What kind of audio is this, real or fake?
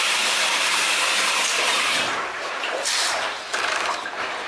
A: fake